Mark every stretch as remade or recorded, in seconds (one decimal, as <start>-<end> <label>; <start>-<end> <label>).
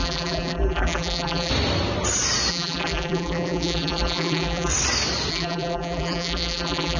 0.0-1.5 remade; 1.5-2.5 recorded; 2.5-4.7 remade; 4.7-5.3 recorded; 5.3-7.0 remade